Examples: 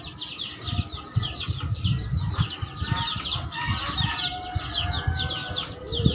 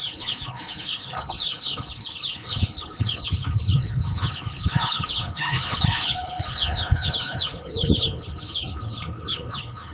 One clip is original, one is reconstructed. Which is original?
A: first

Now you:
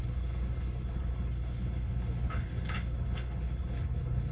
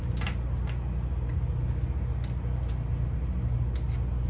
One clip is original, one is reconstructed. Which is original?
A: second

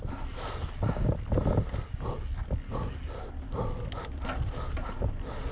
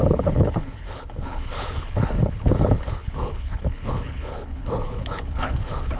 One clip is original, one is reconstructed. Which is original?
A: first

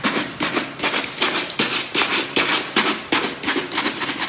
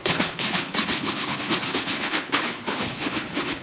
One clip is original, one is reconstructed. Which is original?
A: first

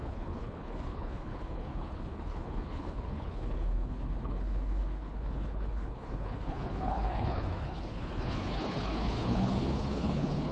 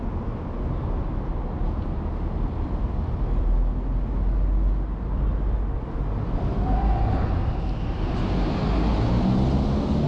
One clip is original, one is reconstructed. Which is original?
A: second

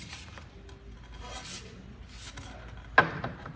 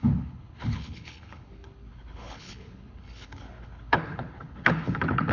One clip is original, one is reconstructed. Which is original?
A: first